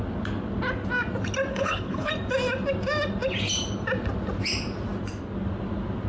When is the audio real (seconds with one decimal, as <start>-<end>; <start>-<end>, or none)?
0.0-1.5; 2.1-6.1